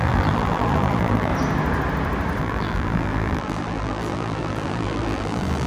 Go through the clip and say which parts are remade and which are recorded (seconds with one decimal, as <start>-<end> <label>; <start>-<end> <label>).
0.0-1.3 remade; 1.3-2.4 recorded; 2.4-5.7 remade